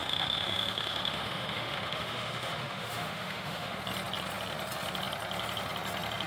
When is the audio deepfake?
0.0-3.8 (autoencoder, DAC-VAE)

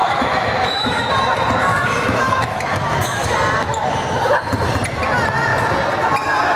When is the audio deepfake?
0.0-1.0 (autoencoder, DAC-VAE); 1.7-3.3

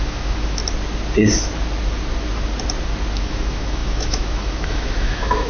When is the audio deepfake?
0.0-0.6 (autoencoder, DAC-VAE); 3.2-5.5

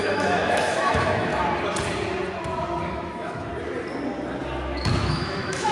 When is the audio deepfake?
0.0-1.3 (autoencoder, DAC-VAE); 2.9-3.5; 5.0-5.7

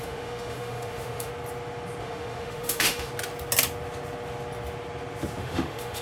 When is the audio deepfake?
0.0-1.3 (autoencoder, DAC-VAE); 2.0-3.1; 5.4-6.0

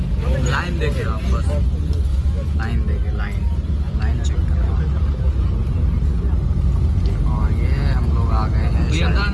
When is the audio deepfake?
2.1-2.6 (autoencoder, DAC-VAE)

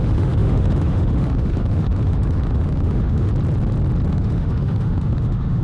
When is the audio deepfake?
0.0-3.3 (autoencoder, DAC-VAE); 4.1-5.6